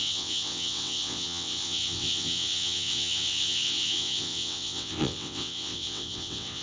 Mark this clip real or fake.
fake